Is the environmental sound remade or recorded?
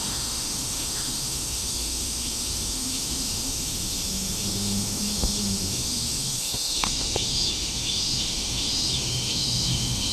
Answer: remade